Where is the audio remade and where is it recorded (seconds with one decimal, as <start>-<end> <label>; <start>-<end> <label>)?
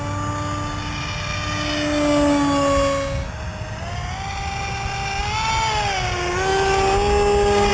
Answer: 0.0-7.7 recorded